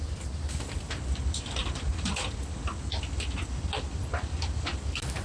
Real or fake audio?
real